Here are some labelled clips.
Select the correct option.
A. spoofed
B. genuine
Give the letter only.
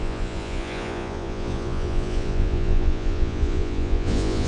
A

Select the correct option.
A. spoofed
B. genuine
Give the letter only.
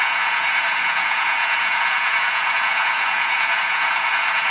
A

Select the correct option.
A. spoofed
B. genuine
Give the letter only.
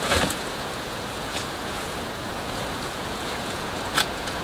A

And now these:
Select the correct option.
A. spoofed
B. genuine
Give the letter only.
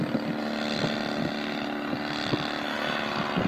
B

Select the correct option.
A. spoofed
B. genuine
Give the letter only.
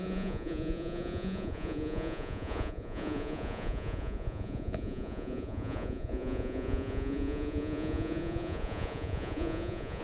A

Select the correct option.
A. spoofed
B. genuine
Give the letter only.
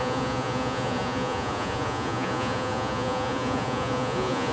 A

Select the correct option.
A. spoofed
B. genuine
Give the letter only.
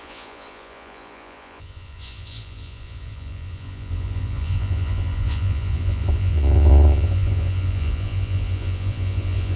A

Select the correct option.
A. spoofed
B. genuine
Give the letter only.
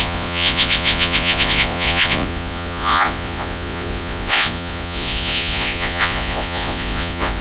A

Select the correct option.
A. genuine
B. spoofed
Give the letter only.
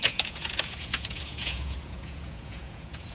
B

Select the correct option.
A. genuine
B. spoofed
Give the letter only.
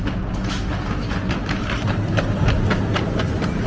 A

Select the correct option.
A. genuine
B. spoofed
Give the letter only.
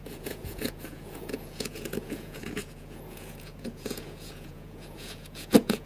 B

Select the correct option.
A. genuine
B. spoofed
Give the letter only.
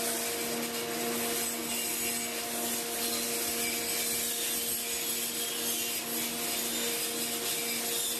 A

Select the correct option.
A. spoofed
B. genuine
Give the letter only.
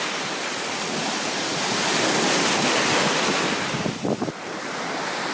B